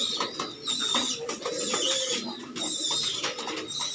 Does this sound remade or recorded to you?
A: recorded